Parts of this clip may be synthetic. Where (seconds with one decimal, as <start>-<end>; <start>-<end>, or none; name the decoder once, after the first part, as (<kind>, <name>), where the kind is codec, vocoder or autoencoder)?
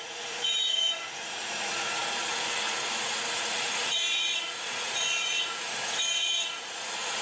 0.0-7.2 (vocoder, Vocos)